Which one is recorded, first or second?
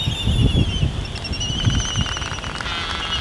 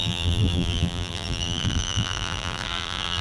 first